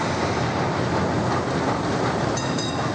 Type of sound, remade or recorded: recorded